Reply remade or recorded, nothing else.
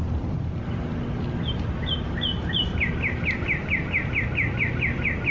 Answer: recorded